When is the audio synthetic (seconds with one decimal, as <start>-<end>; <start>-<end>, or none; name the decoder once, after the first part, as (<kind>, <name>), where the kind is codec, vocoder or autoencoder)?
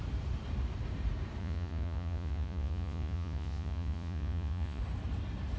1.4-4.8 (vocoder, Vocos)